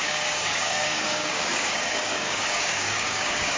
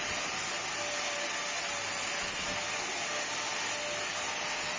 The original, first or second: second